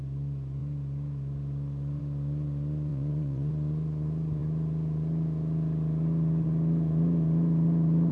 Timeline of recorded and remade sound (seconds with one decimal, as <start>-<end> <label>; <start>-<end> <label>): 0.0-2.9 recorded; 2.9-3.5 remade; 3.5-8.1 recorded